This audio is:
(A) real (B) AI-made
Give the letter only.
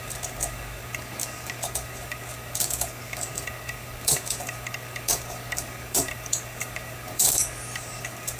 B